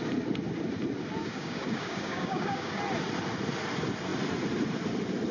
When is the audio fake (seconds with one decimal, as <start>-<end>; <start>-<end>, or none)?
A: 1.2-2.8